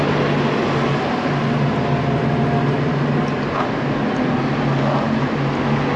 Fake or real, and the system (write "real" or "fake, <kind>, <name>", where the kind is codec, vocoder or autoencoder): real